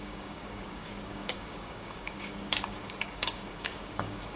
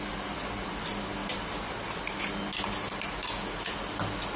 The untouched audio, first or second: second